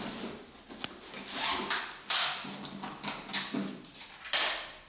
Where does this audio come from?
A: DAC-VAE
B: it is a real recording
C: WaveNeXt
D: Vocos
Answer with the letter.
B